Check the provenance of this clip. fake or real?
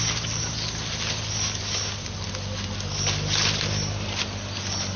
real